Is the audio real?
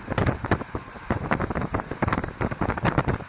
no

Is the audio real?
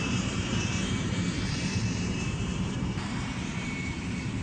no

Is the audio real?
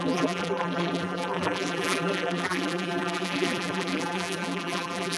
no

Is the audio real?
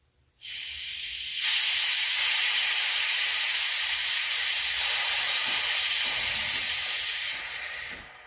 no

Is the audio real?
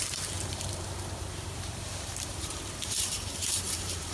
no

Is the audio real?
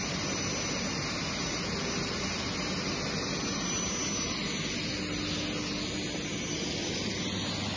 yes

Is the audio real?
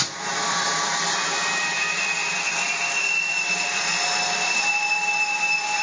no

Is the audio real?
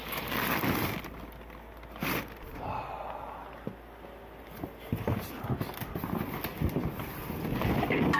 yes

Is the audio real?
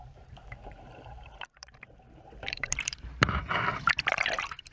no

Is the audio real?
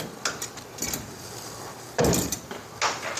yes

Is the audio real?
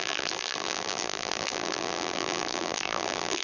no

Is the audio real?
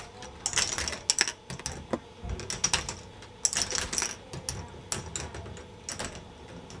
yes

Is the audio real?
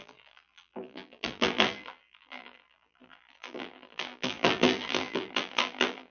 no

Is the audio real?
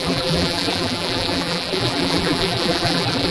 no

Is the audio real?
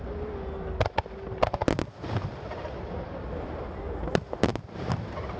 yes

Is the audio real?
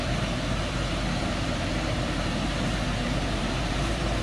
no